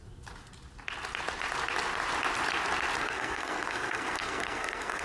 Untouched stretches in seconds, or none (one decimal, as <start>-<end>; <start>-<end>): 0.0-3.0